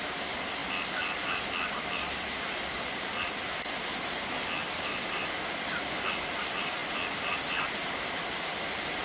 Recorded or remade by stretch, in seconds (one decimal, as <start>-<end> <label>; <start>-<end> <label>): 0.0-9.0 recorded